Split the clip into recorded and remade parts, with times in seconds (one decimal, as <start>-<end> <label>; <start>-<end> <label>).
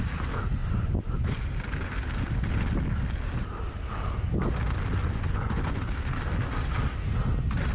0.0-0.6 recorded; 0.6-1.5 remade; 1.5-5.0 recorded; 5.0-5.8 remade; 5.8-7.7 recorded